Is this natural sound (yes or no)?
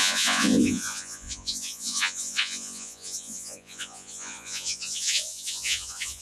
no